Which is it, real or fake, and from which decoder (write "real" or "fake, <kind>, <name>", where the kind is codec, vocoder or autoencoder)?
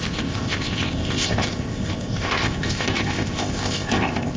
fake, codec, ZipCodec